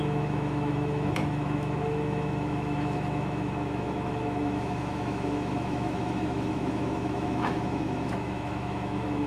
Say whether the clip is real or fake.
fake